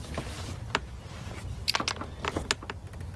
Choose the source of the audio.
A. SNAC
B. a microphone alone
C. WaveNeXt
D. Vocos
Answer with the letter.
B